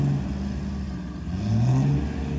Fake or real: real